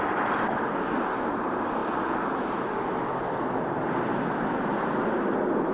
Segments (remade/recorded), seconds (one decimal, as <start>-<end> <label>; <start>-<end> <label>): 0.0-5.7 recorded